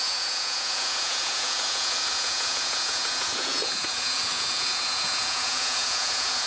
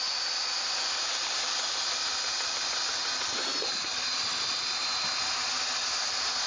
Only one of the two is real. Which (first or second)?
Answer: second